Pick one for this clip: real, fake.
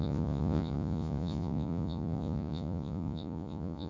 fake